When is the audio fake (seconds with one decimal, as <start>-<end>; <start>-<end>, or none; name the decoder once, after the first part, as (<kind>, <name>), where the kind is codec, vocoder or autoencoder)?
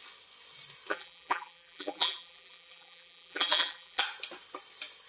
0.9-4.0 (vocoder, BigVGAN v2)